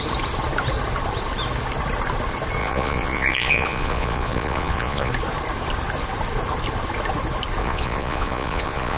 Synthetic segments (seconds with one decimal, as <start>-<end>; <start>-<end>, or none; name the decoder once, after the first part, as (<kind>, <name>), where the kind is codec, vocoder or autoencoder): 2.6-5.1 (vocoder, Vocos); 7.6-9.0